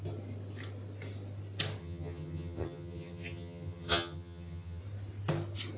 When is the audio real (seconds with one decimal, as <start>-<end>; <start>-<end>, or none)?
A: 0.0-1.8; 4.8-5.8